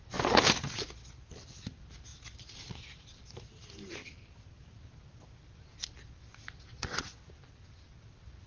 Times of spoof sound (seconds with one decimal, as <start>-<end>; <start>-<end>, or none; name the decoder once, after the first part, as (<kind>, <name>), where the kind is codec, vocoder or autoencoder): 6.7-7.2 (vocoder, WaveNeXt)